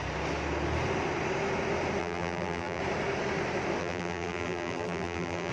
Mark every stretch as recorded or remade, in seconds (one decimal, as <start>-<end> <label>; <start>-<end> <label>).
0.0-2.0 recorded; 2.0-2.8 remade; 2.8-3.8 recorded; 3.8-5.5 remade